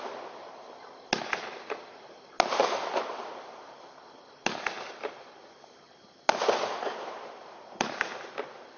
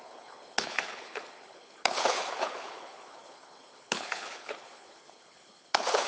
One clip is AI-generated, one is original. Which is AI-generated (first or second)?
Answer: second